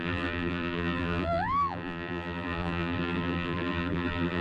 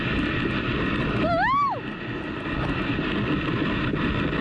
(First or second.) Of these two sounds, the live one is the second